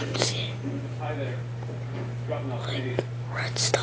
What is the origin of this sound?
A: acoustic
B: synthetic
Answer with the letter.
A